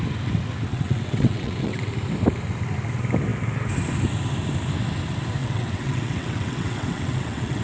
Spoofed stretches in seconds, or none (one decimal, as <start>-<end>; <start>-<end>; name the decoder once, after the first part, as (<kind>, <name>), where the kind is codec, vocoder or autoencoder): 0.7-1.9 (vocoder, WaveNeXt); 5.4-7.6